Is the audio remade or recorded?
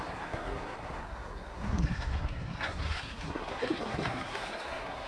remade